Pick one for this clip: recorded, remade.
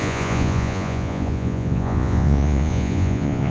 remade